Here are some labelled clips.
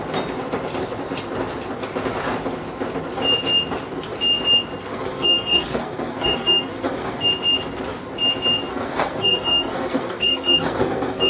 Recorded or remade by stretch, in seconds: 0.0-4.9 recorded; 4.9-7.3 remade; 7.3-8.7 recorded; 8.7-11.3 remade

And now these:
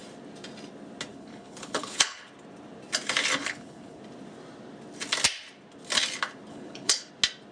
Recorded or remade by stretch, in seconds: 0.0-1.1 recorded; 1.1-2.2 remade; 2.2-3.4 recorded; 3.4-4.0 remade; 4.0-6.5 recorded; 6.5-7.1 remade; 7.1-7.5 recorded

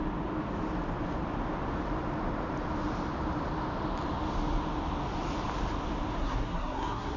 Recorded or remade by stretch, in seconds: 0.0-6.2 recorded; 6.2-7.2 remade

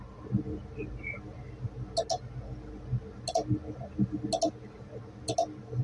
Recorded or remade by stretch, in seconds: 0.0-5.8 recorded

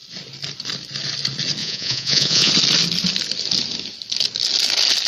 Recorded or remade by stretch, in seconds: 0.0-1.6 recorded; 1.6-2.5 remade; 2.5-5.1 recorded

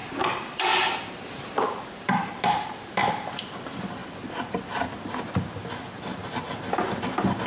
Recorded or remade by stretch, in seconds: 0.0-3.4 remade; 3.4-7.5 recorded

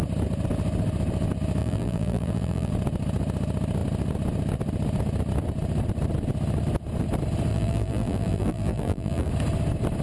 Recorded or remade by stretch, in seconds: 0.0-1.6 recorded; 1.6-2.7 remade; 2.7-7.5 recorded; 7.5-9.3 remade; 9.3-10.0 recorded